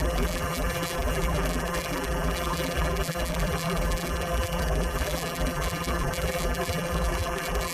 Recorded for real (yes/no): no